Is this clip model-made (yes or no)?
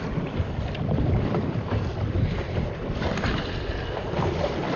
no